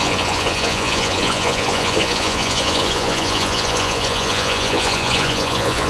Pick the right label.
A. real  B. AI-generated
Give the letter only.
B